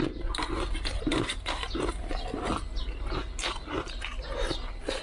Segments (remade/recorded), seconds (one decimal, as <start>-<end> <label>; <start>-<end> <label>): 0.0-5.0 recorded